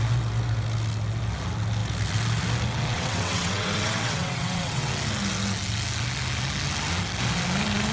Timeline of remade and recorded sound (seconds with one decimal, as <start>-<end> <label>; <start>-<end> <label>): 0.0-2.9 recorded; 2.9-4.9 remade; 4.9-7.9 recorded